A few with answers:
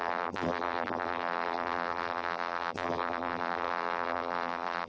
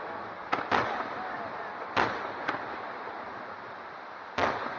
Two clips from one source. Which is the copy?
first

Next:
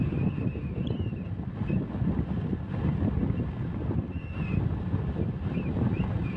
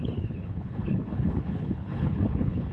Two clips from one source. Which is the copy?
second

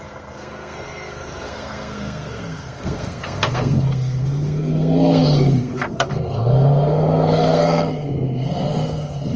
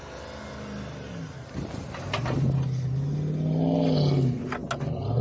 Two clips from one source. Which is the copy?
first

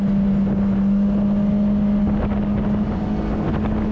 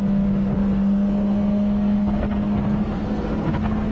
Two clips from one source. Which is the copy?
second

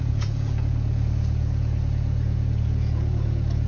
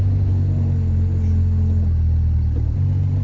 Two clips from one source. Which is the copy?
first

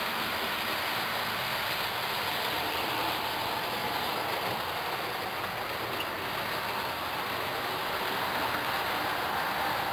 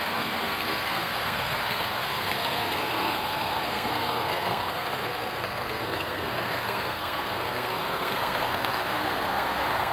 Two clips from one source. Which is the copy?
second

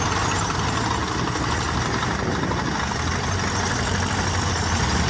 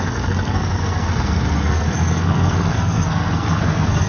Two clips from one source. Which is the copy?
second